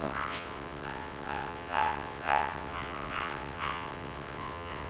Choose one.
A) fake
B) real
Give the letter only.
A